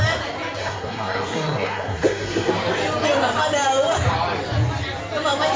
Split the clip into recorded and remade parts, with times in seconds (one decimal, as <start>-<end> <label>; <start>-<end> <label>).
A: 0.0-0.6 recorded; 0.6-2.5 remade; 2.5-5.6 recorded